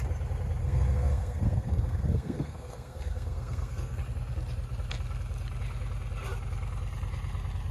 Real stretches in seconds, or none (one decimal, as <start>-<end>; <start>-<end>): 0.0-0.6; 4.0-7.7